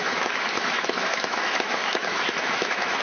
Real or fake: fake